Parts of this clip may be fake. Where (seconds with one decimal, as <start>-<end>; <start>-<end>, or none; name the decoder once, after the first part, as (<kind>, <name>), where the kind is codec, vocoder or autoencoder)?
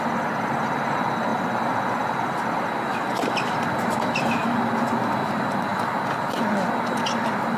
none